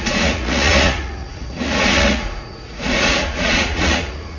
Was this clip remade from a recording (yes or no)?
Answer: yes